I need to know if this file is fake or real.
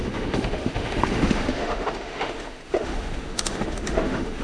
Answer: fake